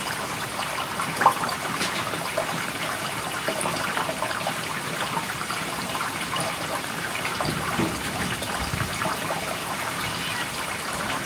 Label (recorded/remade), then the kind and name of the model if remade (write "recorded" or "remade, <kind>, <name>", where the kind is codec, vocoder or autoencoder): remade, vocoder, BigVGAN v2